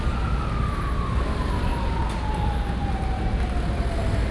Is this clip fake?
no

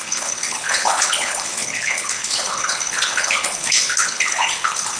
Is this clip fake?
yes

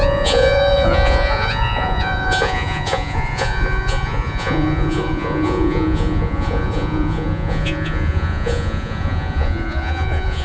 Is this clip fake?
yes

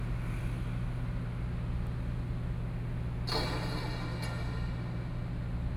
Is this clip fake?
no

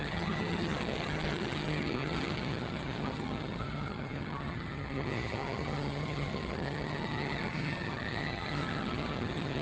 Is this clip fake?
yes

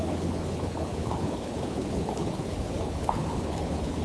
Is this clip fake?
yes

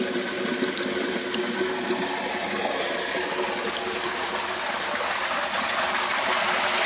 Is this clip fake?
no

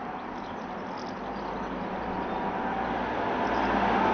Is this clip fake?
no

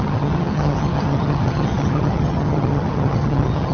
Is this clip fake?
yes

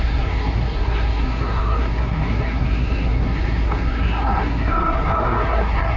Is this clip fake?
yes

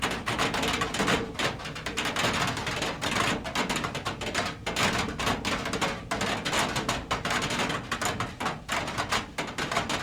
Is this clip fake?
no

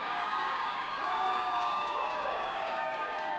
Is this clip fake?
yes